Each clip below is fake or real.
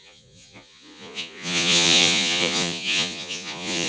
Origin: fake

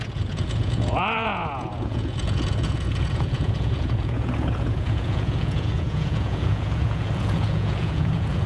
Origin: fake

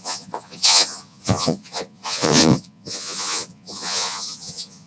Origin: fake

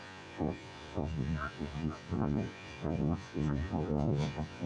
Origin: fake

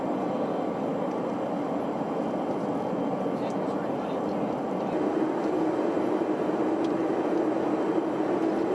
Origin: real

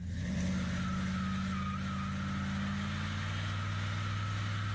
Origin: real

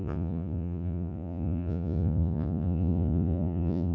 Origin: fake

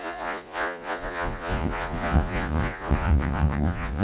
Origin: fake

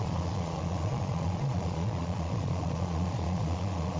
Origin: fake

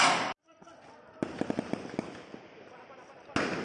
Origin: real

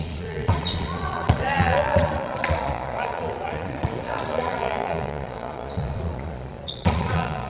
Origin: fake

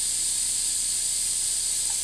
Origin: real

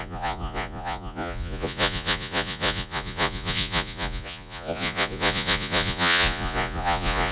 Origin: fake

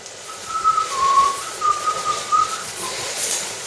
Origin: fake